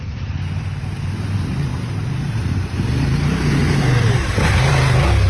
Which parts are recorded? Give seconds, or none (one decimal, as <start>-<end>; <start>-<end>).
0.0-1.7; 2.6-3.6; 4.7-5.3